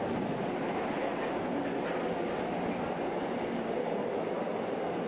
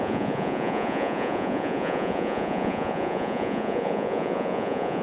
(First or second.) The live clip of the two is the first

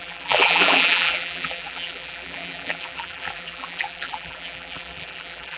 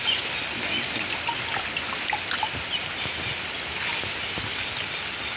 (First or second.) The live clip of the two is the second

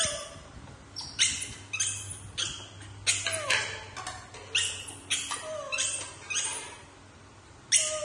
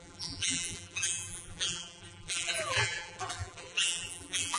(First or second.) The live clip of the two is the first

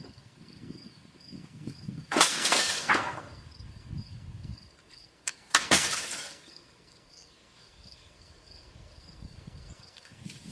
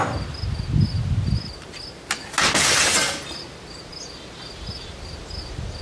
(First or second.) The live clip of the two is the second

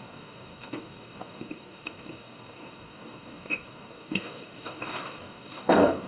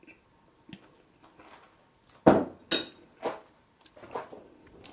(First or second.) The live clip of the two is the second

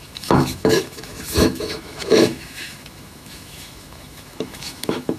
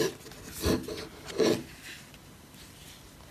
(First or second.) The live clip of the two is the second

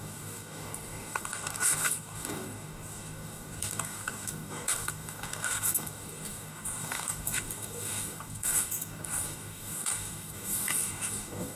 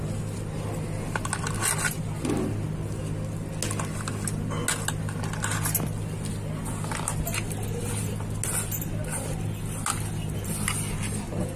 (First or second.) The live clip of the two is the second